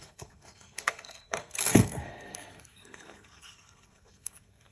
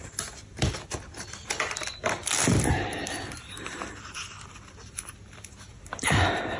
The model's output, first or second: first